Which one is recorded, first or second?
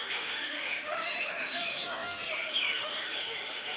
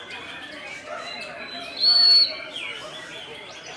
second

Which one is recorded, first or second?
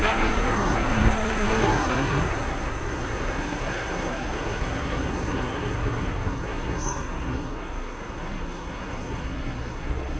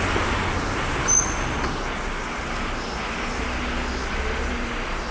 second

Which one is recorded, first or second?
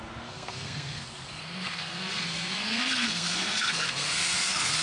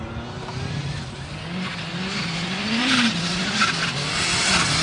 second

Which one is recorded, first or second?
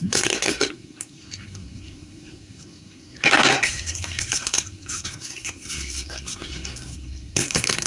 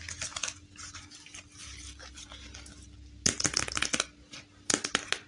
second